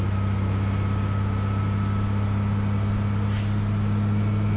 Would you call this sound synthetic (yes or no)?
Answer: no